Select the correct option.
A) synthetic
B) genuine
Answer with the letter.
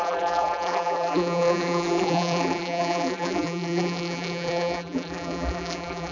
A